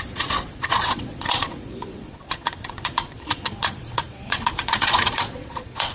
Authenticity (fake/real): fake